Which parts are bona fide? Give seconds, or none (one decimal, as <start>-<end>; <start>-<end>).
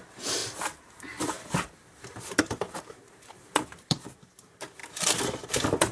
4.8-5.5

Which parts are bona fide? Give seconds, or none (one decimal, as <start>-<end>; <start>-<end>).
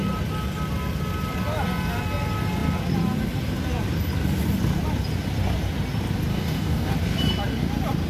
0.0-6.3; 6.9-8.1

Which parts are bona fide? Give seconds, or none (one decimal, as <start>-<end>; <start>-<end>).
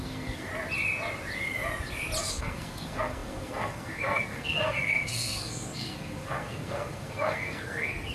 0.5-2.2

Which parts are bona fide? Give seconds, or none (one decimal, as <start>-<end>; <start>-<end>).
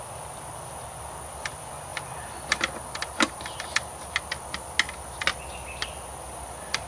0.0-6.9